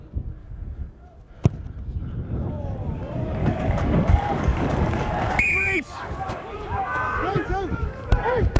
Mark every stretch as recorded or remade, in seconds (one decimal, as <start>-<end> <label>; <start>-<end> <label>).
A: 0.0-0.4 recorded; 0.4-1.3 remade; 1.3-3.4 recorded; 3.4-8.1 remade; 8.1-8.6 recorded